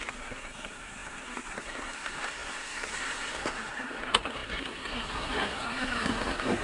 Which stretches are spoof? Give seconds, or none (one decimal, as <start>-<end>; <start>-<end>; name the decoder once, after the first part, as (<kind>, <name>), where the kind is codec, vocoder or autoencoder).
0.0-6.6 (codec, SNAC)